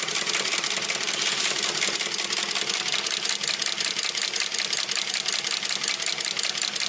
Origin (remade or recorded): recorded